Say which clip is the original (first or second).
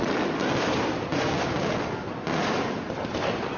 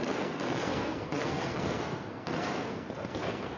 first